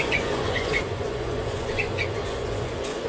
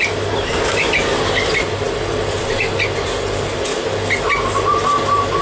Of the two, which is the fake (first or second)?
first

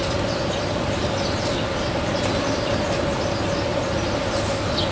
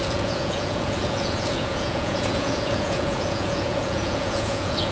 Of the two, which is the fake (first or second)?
second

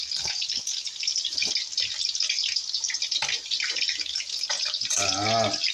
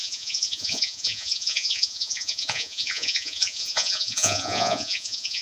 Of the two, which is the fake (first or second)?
second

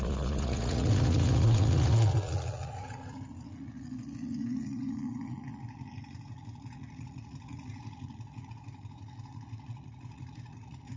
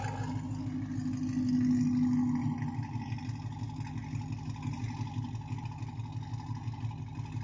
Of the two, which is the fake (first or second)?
first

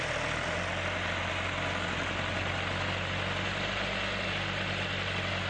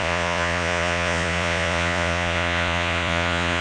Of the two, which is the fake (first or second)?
second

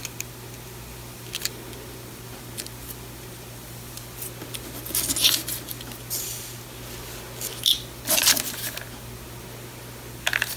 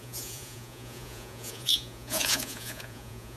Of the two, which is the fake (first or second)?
second